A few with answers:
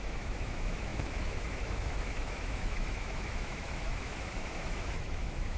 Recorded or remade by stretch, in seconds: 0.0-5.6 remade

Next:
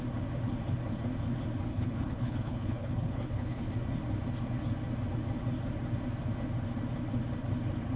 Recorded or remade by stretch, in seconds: 0.0-1.7 recorded; 1.7-3.7 remade; 3.7-8.0 recorded

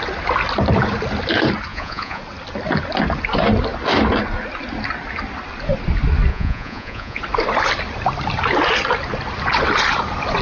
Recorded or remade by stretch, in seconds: 0.0-1.7 recorded; 1.7-2.2 remade; 2.2-6.3 recorded; 6.3-7.2 remade; 7.2-10.4 recorded

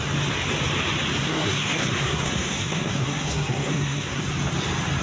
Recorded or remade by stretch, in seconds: 0.0-1.2 recorded; 1.2-4.2 remade; 4.2-5.0 recorded

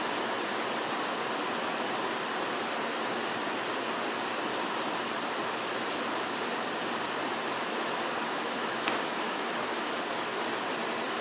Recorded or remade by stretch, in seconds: 0.0-7.6 recorded; 7.6-9.8 remade; 9.8-11.2 recorded

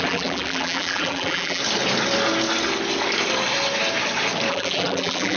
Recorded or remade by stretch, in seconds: 0.0-1.6 remade; 1.6-4.5 recorded; 4.5-5.4 remade

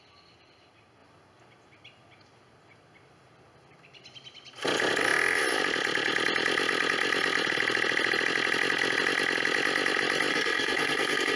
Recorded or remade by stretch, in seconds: 0.0-10.3 recorded; 10.3-11.4 remade

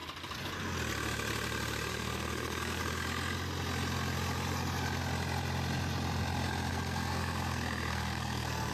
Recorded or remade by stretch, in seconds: 0.0-1.9 recorded; 1.9-2.8 remade; 2.8-6.7 recorded; 6.7-8.7 remade